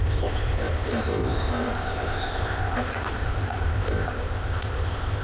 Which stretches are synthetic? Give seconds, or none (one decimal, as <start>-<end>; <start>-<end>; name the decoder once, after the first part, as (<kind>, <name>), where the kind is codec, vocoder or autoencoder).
0.0-5.2 (codec, ZipCodec)